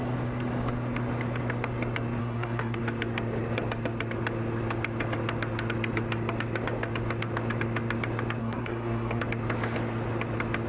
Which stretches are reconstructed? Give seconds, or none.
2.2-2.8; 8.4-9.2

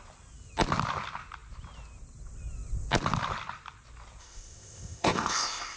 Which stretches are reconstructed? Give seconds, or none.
4.2-5.8

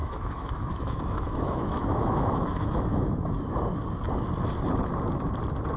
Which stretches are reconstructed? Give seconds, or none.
0.0-3.5

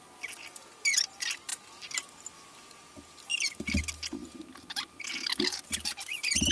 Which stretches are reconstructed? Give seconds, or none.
none

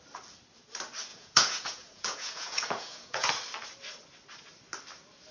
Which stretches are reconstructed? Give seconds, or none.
1.1-3.3